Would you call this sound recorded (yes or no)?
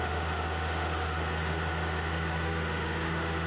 no